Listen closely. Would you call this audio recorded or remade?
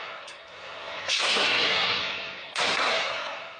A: remade